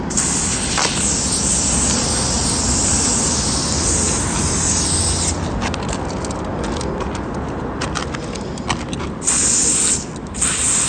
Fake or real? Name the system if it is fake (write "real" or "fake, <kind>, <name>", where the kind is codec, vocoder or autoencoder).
real